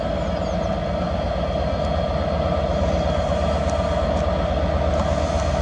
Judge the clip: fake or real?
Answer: real